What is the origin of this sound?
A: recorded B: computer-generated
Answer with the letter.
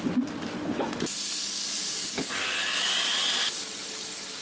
A